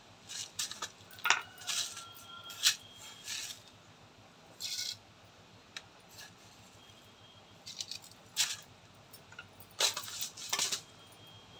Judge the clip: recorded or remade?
recorded